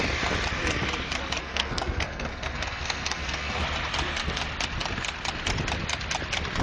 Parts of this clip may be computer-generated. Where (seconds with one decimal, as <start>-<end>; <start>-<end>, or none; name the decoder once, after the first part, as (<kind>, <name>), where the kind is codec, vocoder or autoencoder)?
1.4-3.6 (codec, SNAC)